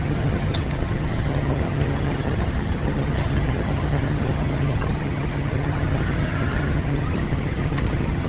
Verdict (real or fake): fake